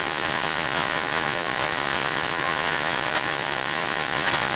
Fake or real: fake